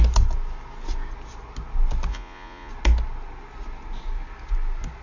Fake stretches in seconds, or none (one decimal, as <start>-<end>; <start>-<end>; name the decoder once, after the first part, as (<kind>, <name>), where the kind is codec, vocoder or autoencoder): 2.1-2.7 (vocoder, Vocos)